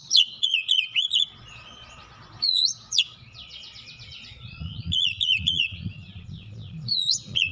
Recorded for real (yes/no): no